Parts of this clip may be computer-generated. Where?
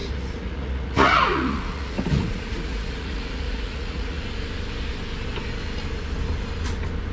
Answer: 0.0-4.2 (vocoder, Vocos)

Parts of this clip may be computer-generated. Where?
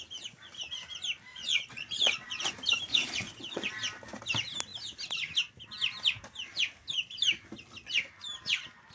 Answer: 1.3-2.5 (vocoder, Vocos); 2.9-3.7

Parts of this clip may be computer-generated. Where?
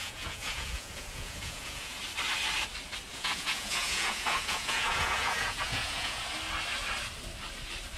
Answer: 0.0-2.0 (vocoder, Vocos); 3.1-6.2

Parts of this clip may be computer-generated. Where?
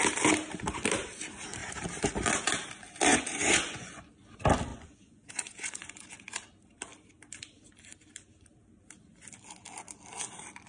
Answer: 3.1-4.2 (vocoder, Vocos); 4.7-6.1